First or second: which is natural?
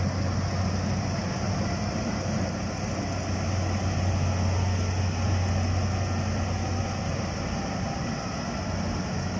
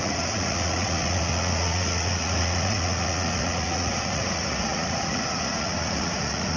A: first